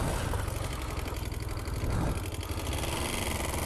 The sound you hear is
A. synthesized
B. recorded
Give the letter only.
B